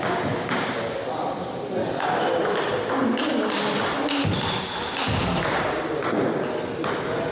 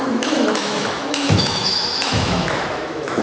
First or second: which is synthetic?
second